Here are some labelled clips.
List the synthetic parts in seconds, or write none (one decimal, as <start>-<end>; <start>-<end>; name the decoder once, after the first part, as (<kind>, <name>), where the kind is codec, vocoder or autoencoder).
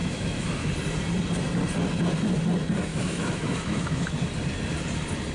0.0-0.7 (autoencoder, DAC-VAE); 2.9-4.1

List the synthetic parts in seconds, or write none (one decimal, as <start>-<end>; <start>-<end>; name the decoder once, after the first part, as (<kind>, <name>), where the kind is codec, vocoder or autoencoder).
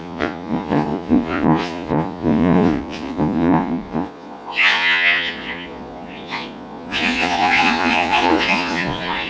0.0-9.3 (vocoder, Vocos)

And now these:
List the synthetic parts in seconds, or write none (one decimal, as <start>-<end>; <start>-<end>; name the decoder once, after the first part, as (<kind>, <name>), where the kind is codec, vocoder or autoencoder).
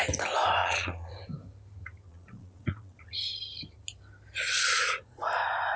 0.6-1.1 (vocoder, Vocos); 2.1-3.0; 4.4-5.2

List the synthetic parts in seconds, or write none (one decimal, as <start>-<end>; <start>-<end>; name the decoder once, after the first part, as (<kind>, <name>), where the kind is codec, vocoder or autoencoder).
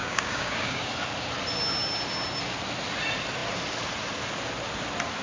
0.0-0.9 (codec, DAC)